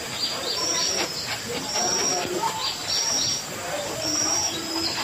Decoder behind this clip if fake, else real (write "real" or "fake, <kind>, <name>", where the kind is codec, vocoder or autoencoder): fake, vocoder, BigVGAN v2